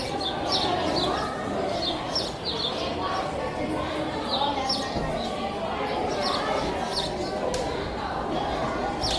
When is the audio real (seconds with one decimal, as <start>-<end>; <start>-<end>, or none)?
0.0-9.2